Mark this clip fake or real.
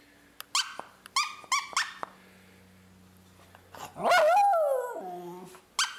real